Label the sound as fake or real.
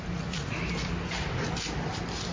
real